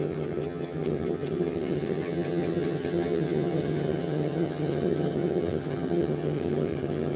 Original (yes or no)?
no